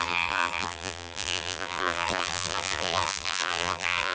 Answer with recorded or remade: remade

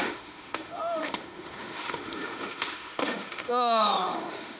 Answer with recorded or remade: remade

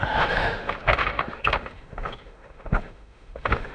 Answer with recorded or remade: remade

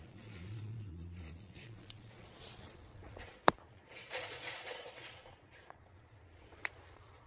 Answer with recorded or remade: remade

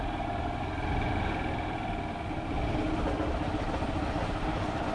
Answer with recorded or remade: recorded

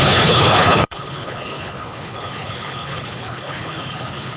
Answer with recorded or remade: remade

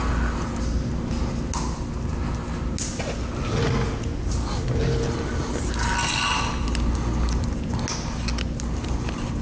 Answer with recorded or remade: recorded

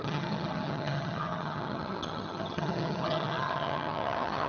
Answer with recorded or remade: remade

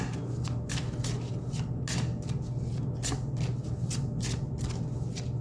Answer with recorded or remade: recorded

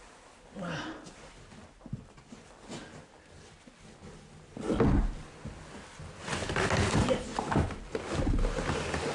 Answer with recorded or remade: recorded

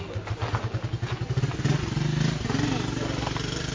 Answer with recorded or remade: recorded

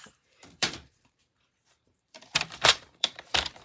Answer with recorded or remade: remade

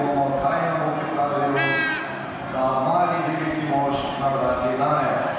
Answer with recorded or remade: recorded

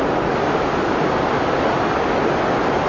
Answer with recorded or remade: recorded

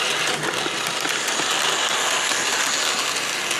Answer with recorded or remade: recorded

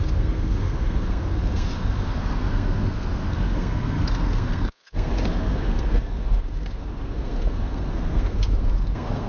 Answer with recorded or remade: remade